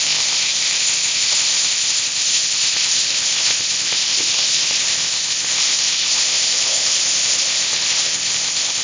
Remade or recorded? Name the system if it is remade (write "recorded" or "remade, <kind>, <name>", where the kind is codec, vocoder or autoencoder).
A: remade, codec, ZipCodec